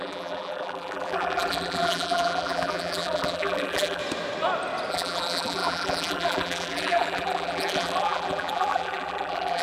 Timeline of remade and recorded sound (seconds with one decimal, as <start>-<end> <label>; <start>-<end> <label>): 0.0-4.0 remade; 4.0-4.9 recorded; 4.9-9.6 remade